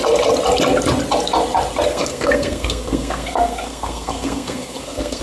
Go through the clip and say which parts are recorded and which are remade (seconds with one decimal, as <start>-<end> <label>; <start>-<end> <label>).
0.0-1.9 recorded; 1.9-5.2 remade